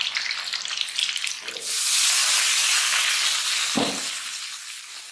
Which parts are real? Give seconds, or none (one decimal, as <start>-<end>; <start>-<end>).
0.0-5.1